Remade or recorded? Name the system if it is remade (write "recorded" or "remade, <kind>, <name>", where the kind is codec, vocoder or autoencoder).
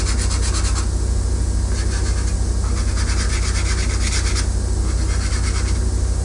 recorded